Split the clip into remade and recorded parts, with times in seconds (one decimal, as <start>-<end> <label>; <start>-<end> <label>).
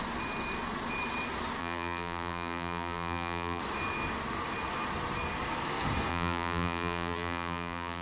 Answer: 0.0-1.6 recorded; 1.6-3.6 remade; 3.6-6.1 recorded; 6.1-8.0 remade